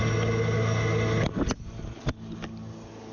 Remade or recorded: recorded